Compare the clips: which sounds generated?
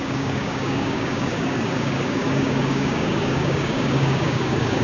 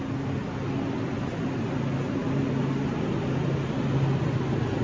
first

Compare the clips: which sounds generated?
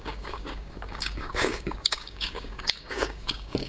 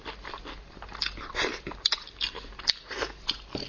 first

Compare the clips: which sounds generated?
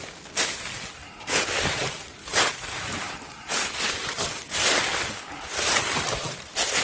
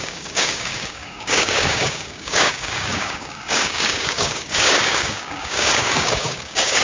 second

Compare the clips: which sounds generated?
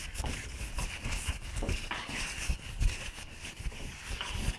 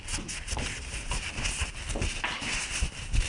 first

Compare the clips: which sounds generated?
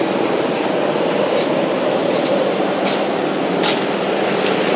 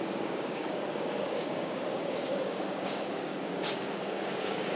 second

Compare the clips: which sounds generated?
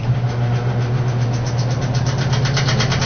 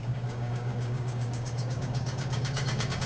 second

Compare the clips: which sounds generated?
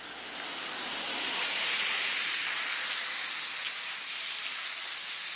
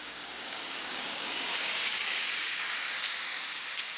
second